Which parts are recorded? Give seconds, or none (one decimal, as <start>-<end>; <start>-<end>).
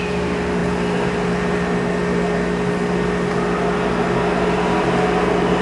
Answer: 0.0-5.6